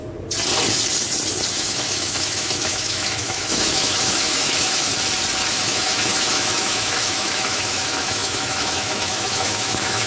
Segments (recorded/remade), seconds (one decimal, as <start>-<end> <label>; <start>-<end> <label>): 0.0-1.5 recorded; 1.5-4.9 remade; 4.9-5.5 recorded; 5.5-10.1 remade